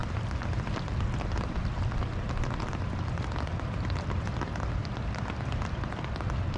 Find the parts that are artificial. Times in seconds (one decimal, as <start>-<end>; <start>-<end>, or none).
none